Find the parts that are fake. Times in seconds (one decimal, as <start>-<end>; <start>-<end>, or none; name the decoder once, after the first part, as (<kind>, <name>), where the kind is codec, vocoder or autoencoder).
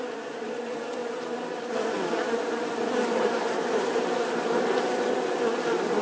1.0-4.6 (vocoder, BigVGAN v2)